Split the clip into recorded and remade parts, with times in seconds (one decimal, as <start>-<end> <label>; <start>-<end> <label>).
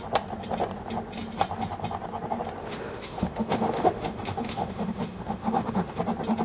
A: 0.0-2.6 recorded; 2.6-6.0 remade; 6.0-6.4 recorded